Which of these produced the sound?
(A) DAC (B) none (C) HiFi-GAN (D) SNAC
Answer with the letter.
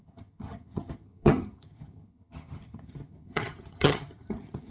C